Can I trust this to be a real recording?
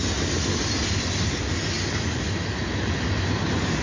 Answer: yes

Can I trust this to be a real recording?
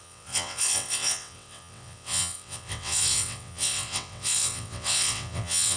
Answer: no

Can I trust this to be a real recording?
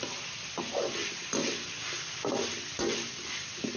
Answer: yes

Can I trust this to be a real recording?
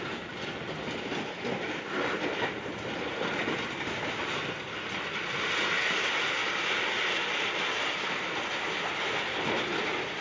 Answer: yes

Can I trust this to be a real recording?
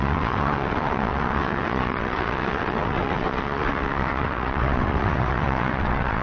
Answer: no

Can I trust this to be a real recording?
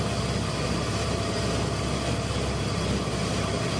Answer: yes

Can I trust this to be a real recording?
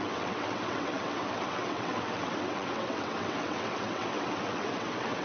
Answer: no